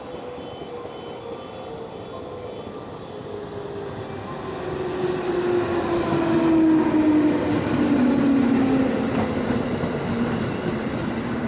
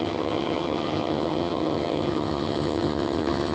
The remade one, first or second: second